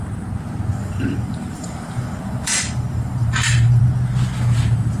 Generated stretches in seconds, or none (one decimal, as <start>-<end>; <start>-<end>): 0.8-3.8